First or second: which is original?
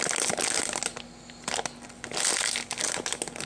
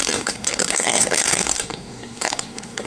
first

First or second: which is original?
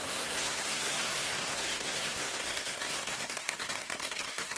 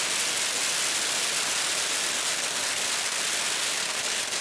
second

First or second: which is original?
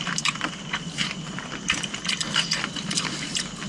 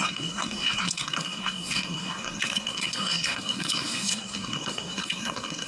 first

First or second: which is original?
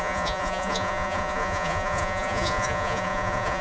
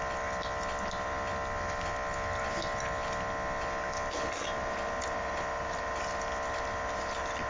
second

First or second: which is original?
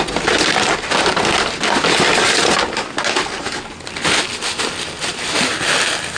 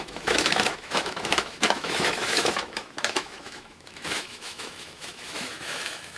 first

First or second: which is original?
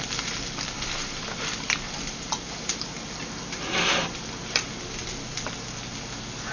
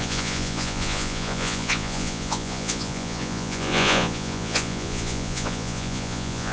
first